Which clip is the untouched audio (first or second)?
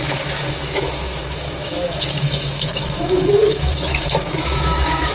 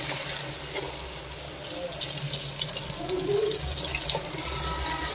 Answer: second